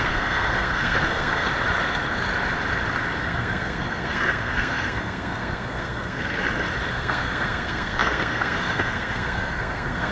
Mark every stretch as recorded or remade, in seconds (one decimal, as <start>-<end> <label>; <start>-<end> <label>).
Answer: 0.0-1.5 remade; 1.5-3.2 recorded; 3.2-6.4 remade; 6.4-6.9 recorded; 6.9-10.1 remade